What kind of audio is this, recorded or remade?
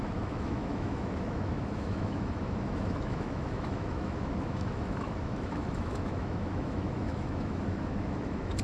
remade